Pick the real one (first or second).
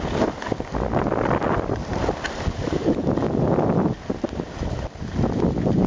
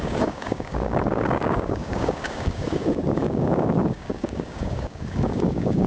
first